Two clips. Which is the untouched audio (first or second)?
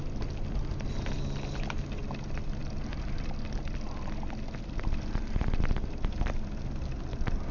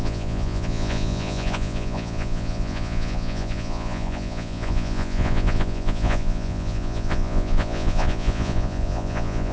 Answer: first